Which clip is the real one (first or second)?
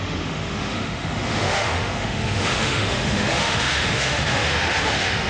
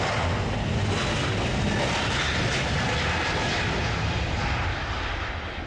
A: second